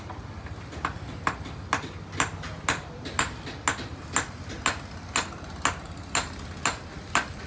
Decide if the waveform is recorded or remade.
recorded